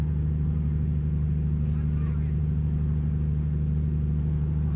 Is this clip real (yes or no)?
no